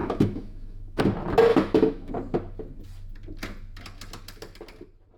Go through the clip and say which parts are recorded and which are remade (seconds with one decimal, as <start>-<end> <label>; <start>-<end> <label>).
0.0-1.0 remade; 1.0-1.5 recorded; 1.5-2.1 remade; 2.1-5.2 recorded